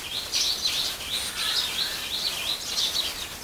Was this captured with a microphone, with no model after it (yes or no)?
yes